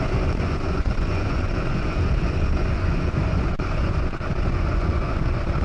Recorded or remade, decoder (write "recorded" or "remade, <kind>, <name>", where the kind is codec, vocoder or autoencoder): remade, vocoder, Vocos